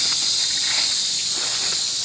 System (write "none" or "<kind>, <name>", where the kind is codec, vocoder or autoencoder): vocoder, Vocos